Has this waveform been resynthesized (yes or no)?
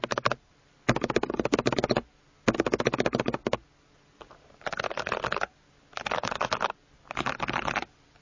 no